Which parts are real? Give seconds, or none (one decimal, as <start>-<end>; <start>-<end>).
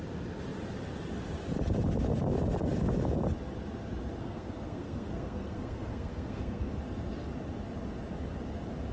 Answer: 0.0-4.2; 6.7-8.9